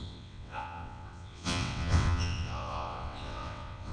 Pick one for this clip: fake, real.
fake